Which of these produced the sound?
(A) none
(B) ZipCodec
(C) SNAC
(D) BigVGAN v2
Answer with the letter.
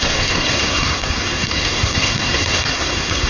C